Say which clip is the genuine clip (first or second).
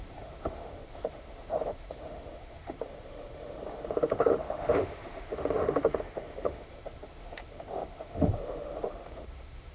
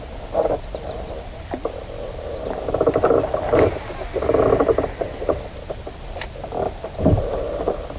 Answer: second